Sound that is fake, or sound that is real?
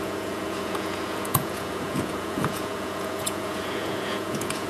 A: fake